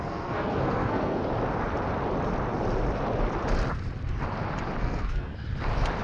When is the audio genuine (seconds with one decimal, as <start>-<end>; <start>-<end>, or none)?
1.2-4.8; 5.3-6.0